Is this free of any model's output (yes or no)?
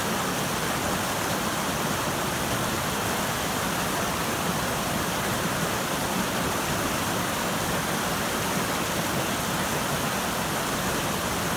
yes